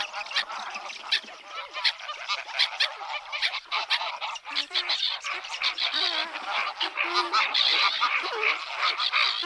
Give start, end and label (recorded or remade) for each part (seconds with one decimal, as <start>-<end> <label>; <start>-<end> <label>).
0.0-3.3 recorded; 3.3-5.3 remade; 5.3-7.7 recorded; 7.7-8.3 remade; 8.3-9.5 recorded